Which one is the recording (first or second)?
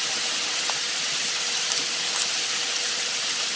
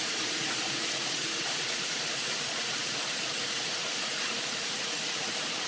first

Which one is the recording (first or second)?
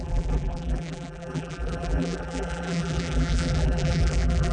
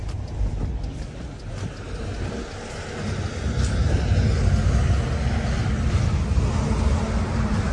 second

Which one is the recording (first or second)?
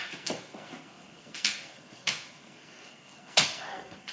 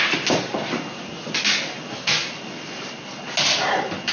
second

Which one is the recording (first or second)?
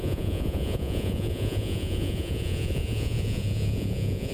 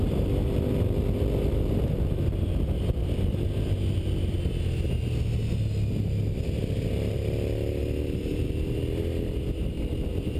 second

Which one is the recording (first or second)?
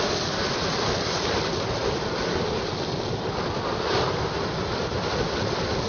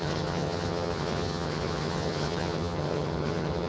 first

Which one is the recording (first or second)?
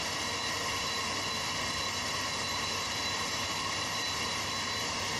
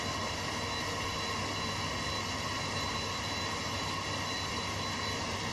second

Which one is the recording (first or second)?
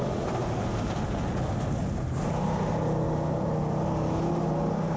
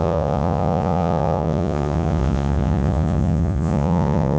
first